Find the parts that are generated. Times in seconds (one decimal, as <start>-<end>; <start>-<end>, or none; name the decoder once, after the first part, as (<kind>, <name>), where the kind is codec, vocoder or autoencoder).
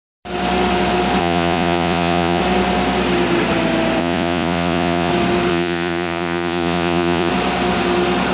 1.2-2.4 (vocoder, Vocos); 4.0-5.1; 5.5-7.3